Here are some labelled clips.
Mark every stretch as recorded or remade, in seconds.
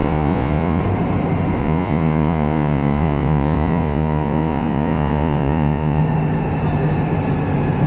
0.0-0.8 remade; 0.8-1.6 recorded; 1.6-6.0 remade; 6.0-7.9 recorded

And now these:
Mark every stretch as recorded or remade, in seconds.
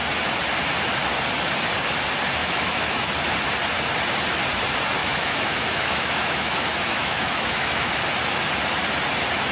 0.0-2.4 recorded; 2.4-3.1 remade; 3.1-5.0 recorded; 5.0-8.0 remade; 8.0-9.5 recorded